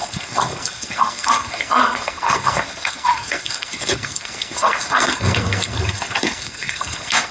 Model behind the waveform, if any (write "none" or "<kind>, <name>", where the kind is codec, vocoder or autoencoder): codec, SNAC